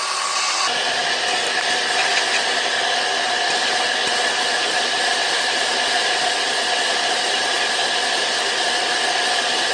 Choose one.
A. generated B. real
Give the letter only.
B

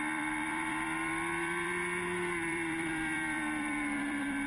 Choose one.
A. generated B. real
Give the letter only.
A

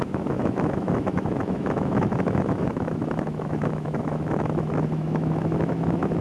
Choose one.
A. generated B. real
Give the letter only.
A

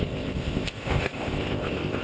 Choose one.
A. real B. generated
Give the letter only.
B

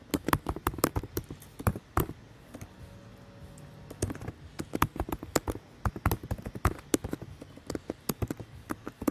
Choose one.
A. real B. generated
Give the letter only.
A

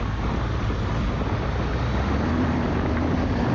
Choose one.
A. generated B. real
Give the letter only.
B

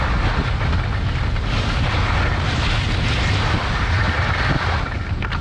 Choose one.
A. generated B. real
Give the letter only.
B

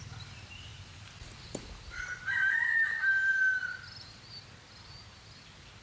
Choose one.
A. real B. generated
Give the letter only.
A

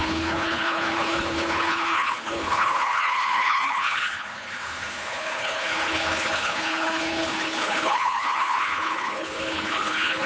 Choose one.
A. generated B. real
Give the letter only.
A